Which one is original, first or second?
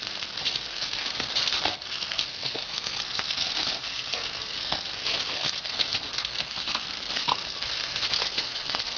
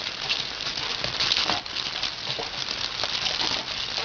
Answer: second